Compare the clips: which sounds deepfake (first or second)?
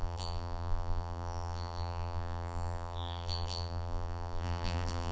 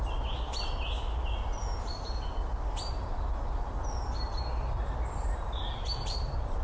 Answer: first